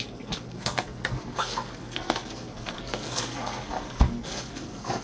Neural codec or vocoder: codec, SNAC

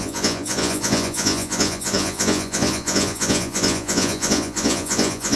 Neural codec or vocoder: vocoder, Vocos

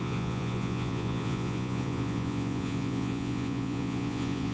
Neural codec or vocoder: vocoder, Vocos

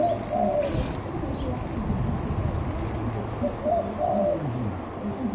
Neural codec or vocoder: none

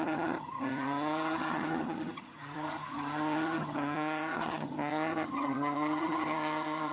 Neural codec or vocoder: vocoder, HiFi-GAN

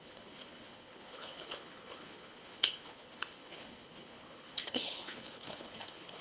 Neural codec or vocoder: codec, HILCodec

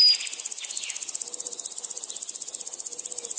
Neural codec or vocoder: none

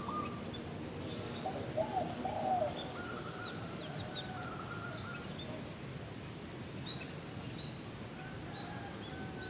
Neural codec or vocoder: none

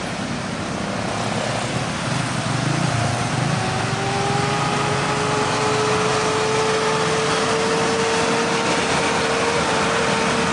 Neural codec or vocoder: none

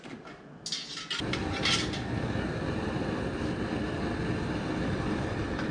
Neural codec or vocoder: none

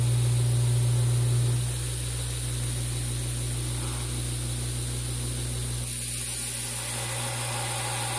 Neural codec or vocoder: none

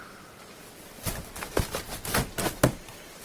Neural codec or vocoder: none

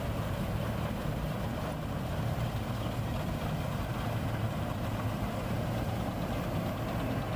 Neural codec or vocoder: none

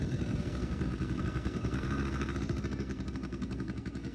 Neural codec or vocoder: codec, SNAC